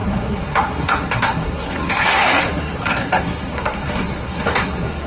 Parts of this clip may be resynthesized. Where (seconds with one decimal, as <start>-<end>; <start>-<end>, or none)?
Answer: 0.0-5.1